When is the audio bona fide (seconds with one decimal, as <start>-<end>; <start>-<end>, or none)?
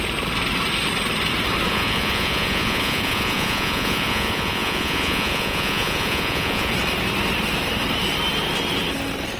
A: 0.0-1.7; 6.7-9.4